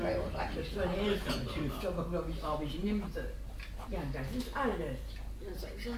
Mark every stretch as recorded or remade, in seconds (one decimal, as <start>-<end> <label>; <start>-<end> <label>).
0.0-6.0 recorded